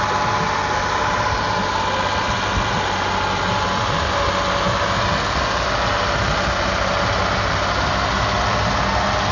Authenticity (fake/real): real